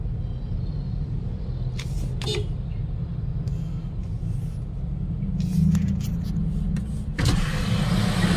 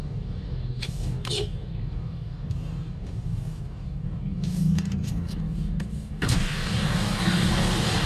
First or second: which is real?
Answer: first